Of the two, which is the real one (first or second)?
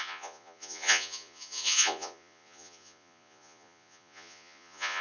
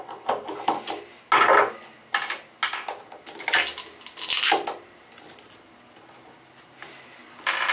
second